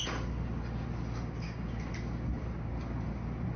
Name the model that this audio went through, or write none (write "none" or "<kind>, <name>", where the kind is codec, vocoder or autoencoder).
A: none